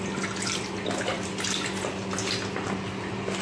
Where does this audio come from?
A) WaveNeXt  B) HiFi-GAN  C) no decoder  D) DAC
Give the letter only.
C